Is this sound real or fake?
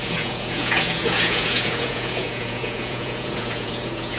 fake